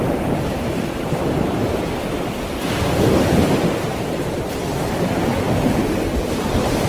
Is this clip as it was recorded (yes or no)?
no